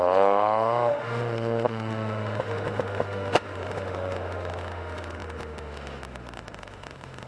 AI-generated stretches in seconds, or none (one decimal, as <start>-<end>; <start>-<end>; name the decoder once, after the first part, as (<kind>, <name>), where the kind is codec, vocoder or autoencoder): 0.0-7.3 (autoencoder, DAC-VAE)